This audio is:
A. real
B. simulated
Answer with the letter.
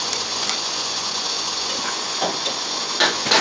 B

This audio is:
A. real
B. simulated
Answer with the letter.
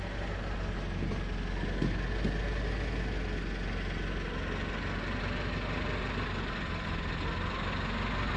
A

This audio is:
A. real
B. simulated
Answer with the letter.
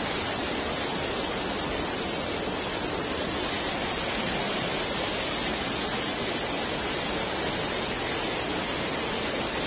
A